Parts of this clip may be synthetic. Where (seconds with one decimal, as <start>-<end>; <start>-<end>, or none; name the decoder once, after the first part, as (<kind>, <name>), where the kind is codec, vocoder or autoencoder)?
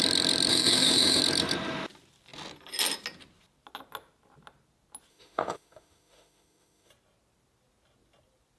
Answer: 0.5-1.2 (autoencoder, DAC-VAE); 5.1-6.9